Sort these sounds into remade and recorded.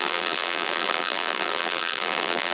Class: remade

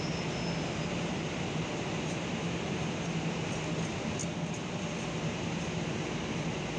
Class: recorded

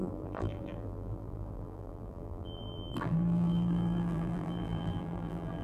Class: remade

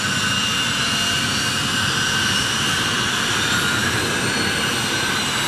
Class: remade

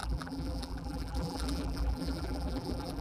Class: remade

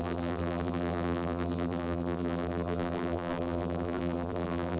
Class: remade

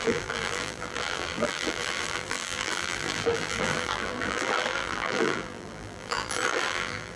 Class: remade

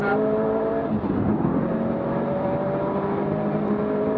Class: remade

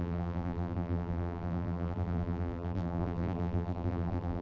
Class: remade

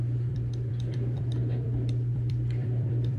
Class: remade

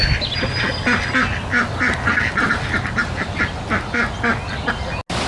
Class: recorded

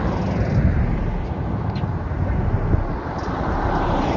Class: recorded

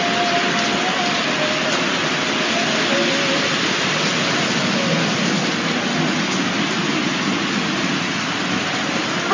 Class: recorded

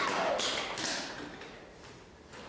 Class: recorded